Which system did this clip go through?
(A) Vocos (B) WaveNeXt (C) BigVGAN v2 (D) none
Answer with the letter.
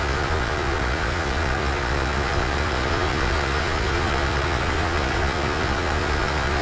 A